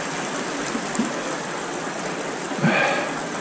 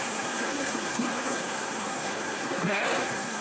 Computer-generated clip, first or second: second